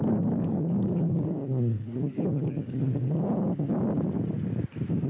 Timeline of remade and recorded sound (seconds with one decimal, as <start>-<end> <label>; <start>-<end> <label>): 0.0-3.1 remade; 3.1-5.1 recorded